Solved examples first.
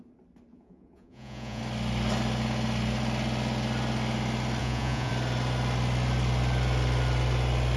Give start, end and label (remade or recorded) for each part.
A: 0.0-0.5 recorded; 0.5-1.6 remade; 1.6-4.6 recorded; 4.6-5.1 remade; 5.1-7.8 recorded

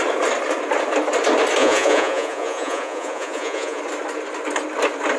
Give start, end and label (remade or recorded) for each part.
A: 0.0-1.6 recorded; 1.6-3.8 remade; 3.8-5.2 recorded

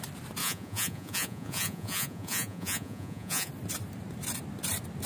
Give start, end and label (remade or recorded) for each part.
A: 0.0-0.4 recorded; 0.4-3.5 remade; 3.5-5.1 recorded